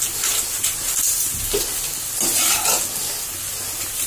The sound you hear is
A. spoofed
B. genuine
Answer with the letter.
B